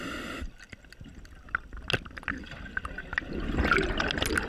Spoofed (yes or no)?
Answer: no